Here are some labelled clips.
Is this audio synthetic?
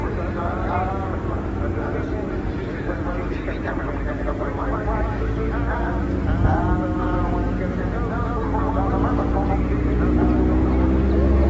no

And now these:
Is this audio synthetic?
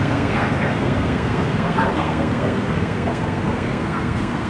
yes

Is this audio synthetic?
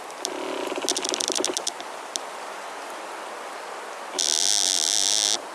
no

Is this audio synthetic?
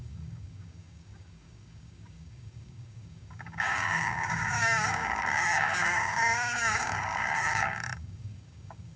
yes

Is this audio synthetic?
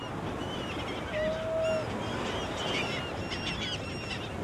no